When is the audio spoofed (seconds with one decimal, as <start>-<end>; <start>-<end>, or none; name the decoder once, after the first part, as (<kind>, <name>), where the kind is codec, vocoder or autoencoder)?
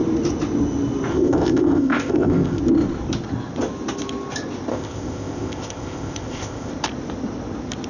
1.1-2.6 (codec, ZipCodec); 4.7-6.7